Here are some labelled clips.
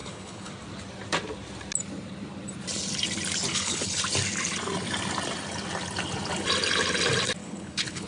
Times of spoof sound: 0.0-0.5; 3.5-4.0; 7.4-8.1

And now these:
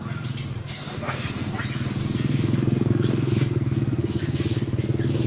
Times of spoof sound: 0.6-1.5; 2.0-4.2

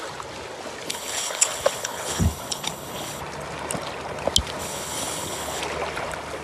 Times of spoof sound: 0.9-3.2; 4.6-5.6